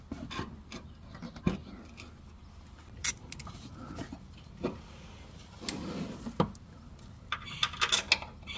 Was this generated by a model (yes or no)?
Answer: no